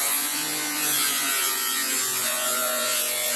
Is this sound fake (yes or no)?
yes